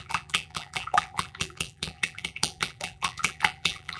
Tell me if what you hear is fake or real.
fake